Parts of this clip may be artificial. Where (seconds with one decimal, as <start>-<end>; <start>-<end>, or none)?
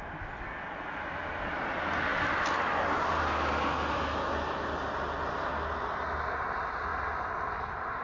none